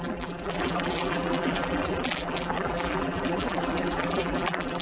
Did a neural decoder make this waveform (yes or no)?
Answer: yes